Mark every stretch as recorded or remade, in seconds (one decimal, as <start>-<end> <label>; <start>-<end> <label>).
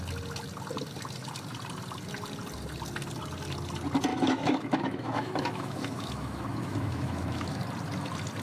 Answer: 0.0-4.1 recorded; 4.1-7.6 remade; 7.6-8.4 recorded